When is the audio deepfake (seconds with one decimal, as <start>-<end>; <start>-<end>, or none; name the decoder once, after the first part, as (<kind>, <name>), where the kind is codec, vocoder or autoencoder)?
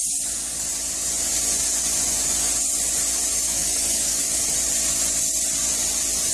3.3-4.4 (codec, DAC)